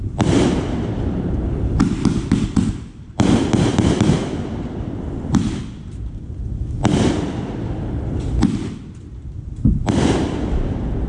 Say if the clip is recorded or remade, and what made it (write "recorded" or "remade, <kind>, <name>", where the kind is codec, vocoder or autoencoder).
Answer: remade, vocoder, BigVGAN v2